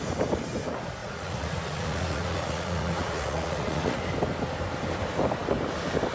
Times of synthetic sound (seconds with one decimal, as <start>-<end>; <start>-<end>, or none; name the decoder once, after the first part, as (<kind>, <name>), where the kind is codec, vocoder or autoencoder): 1.0-4.0 (vocoder, Vocos)